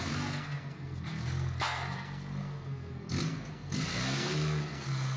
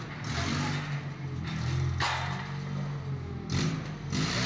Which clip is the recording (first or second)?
second